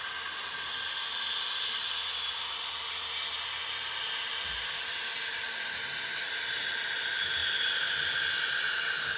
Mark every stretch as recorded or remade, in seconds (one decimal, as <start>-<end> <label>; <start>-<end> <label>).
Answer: 0.0-9.2 recorded